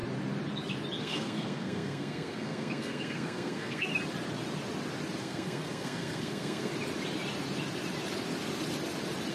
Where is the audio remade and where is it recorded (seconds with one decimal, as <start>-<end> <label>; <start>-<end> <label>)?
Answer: 0.0-1.0 recorded; 1.0-3.9 remade; 3.9-5.2 recorded; 5.2-6.7 remade; 6.7-9.3 recorded